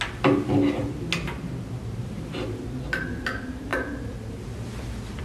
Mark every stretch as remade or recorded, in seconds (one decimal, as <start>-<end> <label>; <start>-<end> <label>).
0.0-5.2 recorded